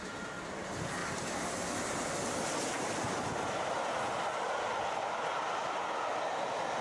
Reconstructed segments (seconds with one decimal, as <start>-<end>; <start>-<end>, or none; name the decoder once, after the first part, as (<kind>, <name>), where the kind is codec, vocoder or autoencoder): none